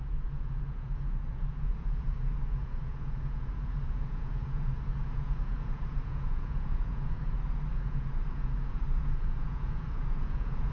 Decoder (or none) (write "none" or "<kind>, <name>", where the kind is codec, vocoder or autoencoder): vocoder, Vocos